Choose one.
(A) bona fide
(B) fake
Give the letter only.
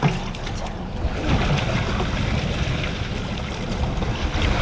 A